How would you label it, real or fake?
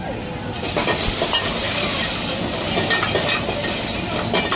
real